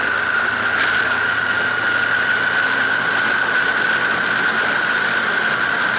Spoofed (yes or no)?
no